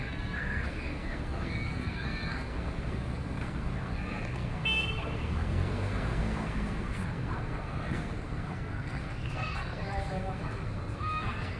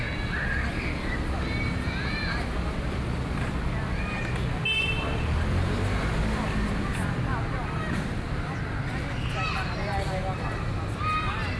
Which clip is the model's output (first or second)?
first